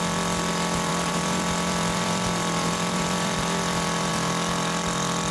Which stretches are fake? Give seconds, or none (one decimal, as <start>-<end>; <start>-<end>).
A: 0.9-4.1